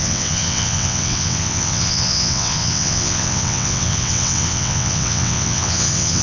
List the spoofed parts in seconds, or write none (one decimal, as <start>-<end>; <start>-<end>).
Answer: 0.0-6.2

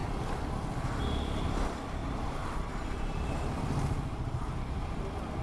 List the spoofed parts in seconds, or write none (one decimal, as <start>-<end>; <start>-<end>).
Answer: 2.0-5.0